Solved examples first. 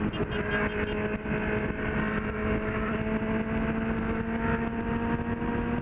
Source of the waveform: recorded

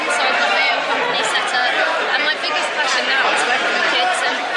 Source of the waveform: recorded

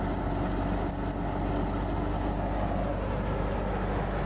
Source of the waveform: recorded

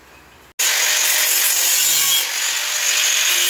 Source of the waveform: recorded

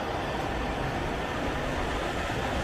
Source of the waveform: recorded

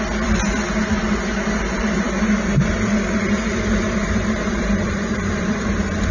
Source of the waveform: remade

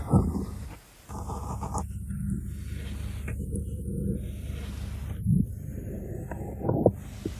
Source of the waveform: recorded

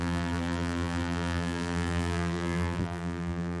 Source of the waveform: remade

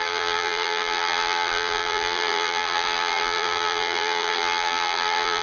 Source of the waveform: remade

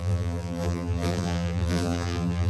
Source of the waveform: remade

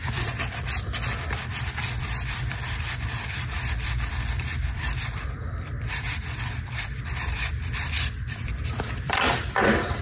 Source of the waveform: remade